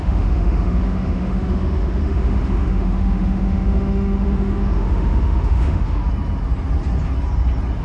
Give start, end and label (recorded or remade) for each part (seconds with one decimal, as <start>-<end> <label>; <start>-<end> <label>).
0.0-6.0 remade; 6.0-7.8 recorded